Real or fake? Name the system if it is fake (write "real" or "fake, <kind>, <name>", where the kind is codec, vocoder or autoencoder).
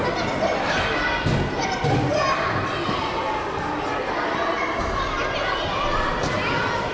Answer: real